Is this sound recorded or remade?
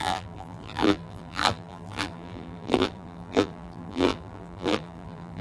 remade